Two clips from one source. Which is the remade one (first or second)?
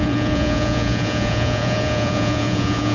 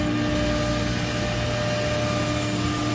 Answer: first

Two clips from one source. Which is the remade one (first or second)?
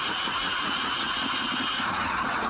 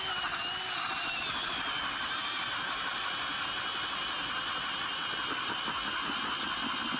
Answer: first